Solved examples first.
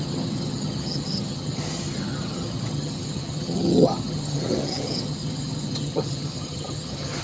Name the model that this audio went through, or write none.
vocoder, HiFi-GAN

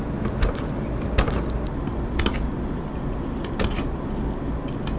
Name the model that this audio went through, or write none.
none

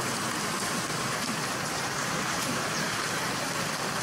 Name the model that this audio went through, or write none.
none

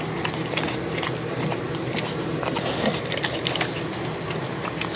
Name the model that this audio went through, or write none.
none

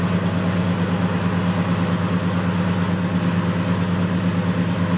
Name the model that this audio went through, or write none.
none